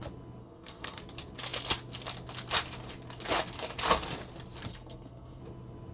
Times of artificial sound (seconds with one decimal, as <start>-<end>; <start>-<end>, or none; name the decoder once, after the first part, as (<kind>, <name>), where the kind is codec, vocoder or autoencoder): 0.4-1.0 (codec, SNAC); 4.7-5.4